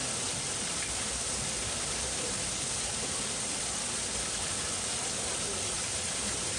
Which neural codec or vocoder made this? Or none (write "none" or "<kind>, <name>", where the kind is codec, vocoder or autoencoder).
none